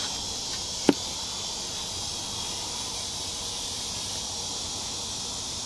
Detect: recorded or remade recorded